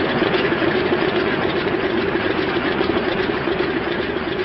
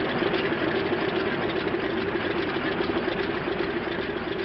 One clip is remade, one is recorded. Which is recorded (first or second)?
second